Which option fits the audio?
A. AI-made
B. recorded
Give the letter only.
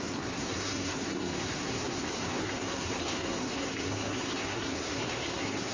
A